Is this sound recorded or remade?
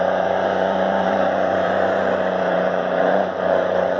remade